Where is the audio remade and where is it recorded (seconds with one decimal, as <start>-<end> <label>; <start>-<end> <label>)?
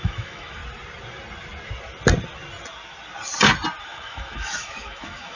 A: 0.0-0.6 remade; 0.6-3.8 recorded; 3.8-5.4 remade